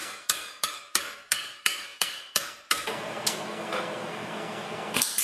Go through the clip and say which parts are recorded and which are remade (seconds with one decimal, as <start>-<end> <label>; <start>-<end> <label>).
0.0-5.2 remade